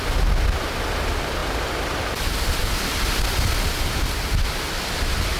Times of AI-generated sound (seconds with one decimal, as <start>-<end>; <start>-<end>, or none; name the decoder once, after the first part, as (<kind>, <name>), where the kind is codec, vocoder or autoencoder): none